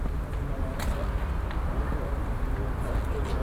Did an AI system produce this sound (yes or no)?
no